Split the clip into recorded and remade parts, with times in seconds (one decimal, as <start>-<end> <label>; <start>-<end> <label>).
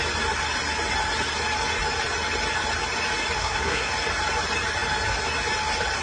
0.0-3.4 recorded; 3.4-3.9 remade; 3.9-6.0 recorded